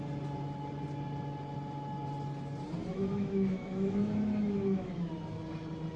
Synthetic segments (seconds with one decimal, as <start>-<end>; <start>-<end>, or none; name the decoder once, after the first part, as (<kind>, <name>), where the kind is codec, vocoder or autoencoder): 2.9-5.1 (autoencoder, DAC-VAE)